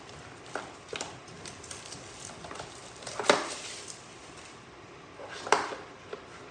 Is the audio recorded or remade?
recorded